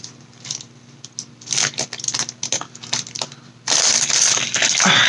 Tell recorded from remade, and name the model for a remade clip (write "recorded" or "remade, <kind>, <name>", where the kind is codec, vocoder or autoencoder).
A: recorded